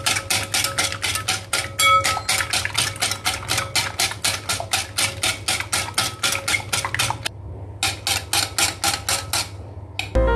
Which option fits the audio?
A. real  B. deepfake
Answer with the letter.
A